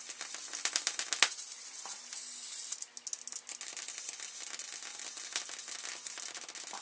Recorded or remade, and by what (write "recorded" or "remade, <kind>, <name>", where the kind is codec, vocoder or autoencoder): recorded